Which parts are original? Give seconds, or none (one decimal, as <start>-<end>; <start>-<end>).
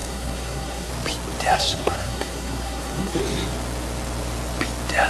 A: 0.9-1.5; 3.2-5.1